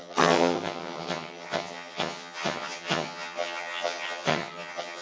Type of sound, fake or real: fake